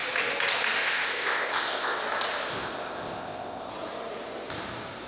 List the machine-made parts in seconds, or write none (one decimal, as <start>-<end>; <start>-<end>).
0.8-2.0; 2.5-3.7